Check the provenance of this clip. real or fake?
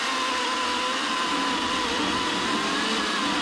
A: real